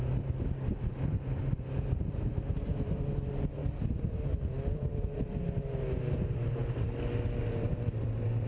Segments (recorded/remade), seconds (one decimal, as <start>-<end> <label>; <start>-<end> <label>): 0.0-3.6 remade; 3.6-4.4 recorded; 4.4-6.6 remade; 6.6-7.4 recorded; 7.4-8.5 remade

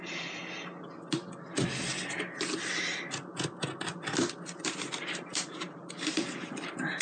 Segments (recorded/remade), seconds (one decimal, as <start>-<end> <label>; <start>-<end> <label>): 0.0-0.4 remade; 0.4-4.6 recorded; 4.6-7.0 remade

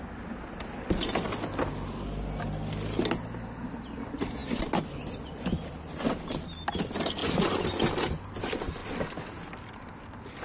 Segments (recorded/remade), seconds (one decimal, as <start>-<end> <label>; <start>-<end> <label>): 0.0-10.4 recorded

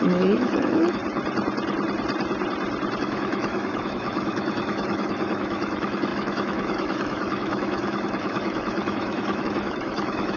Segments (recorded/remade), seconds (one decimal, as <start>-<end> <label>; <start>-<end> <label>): 0.0-1.0 remade; 1.0-3.0 recorded; 3.0-10.4 remade

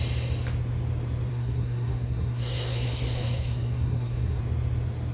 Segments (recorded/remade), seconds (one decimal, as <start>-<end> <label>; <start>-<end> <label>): 0.0-1.3 recorded; 1.3-4.4 remade; 4.4-5.1 recorded

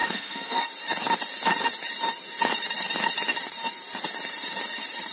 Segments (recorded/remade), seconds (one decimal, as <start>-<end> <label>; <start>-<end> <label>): 0.0-0.7 remade; 0.7-5.1 recorded

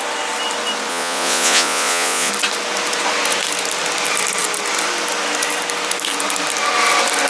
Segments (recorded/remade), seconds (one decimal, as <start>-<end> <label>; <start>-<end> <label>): 0.0-0.9 recorded; 0.9-2.3 remade; 2.3-7.3 recorded

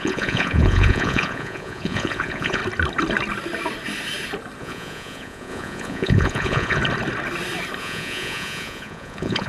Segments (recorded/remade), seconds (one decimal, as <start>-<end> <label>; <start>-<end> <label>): 0.0-2.6 remade; 2.6-4.6 recorded; 4.6-6.8 remade; 6.8-7.8 recorded; 7.8-9.5 remade